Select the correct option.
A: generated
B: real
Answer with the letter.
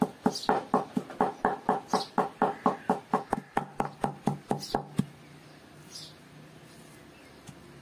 B